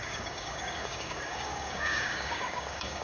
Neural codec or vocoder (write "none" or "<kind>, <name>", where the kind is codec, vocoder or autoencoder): codec, DAC